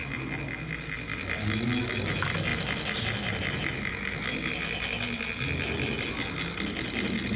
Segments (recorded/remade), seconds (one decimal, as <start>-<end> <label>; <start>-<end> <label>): 0.0-7.4 recorded